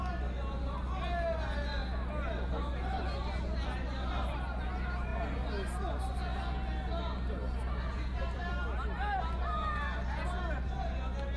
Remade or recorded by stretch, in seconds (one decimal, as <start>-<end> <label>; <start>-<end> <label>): 0.0-11.4 recorded